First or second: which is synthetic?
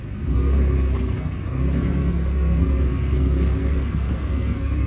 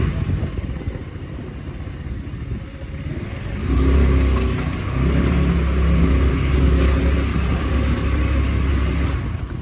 first